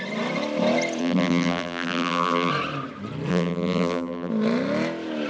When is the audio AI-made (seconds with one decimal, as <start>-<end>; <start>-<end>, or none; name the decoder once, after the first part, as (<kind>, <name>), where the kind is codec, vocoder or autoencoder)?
1.0-2.5 (vocoder, BigVGAN v2); 3.3-4.3

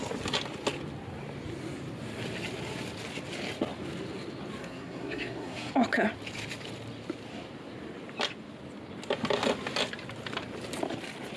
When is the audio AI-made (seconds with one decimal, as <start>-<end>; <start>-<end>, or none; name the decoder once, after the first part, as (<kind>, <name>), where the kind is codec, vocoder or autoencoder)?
4.6-5.7 (codec, SNAC)

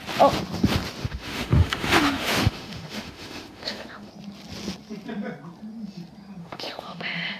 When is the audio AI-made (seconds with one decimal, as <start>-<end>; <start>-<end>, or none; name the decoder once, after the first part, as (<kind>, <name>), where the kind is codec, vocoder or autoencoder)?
1.0-4.1 (autoencoder, DAC-VAE); 6.4-7.4

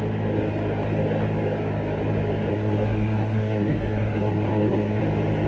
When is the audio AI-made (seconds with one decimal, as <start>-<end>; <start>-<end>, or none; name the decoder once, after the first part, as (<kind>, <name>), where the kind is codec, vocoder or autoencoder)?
2.5-5.0 (codec, SNAC)